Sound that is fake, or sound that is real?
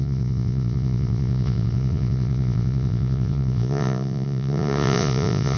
fake